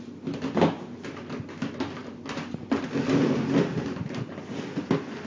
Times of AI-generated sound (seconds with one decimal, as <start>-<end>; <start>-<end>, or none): none